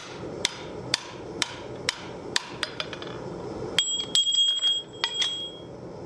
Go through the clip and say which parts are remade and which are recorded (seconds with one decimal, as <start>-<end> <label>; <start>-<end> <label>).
0.0-3.4 remade; 3.4-6.1 recorded